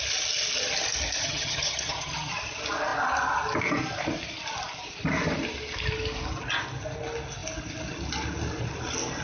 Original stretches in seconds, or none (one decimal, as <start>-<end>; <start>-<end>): 0.0-1.2; 2.3-9.2

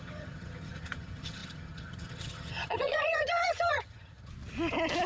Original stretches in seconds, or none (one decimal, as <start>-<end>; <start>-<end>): 4.3-5.1